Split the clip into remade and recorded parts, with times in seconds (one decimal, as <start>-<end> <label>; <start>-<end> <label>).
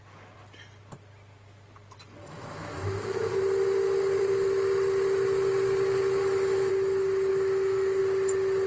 0.0-2.2 recorded; 2.2-3.3 remade; 3.3-6.2 recorded; 6.2-6.7 remade; 6.7-7.3 recorded; 7.3-8.0 remade; 8.0-8.7 recorded